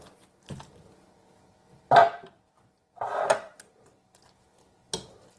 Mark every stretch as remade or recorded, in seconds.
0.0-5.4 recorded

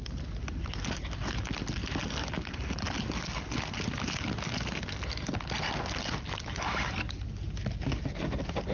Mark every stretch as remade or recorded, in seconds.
0.0-8.7 recorded

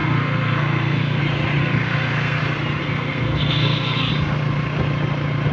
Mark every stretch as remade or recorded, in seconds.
0.0-1.2 remade; 1.2-1.6 recorded; 1.6-2.4 remade; 2.4-2.8 recorded; 2.8-4.1 remade; 4.1-5.5 recorded

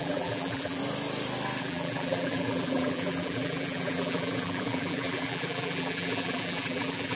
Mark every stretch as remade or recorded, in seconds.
0.0-0.8 remade; 0.8-1.6 recorded; 1.6-7.2 remade

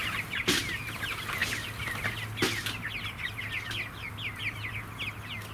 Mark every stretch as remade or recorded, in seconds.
0.0-5.5 recorded

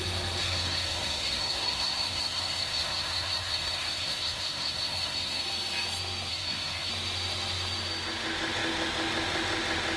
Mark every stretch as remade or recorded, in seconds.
0.0-0.4 recorded; 0.4-5.4 remade; 5.4-6.3 recorded; 6.3-6.9 remade; 6.9-10.0 recorded

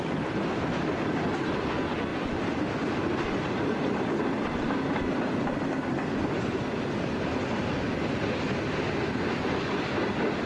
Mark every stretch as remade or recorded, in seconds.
0.0-2.1 recorded; 2.1-6.4 remade; 6.4-10.5 recorded

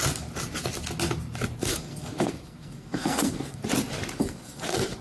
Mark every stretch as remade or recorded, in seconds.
0.0-1.7 recorded; 1.7-3.6 remade; 3.6-4.2 recorded; 4.2-5.0 remade